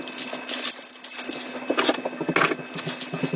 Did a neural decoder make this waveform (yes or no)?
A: no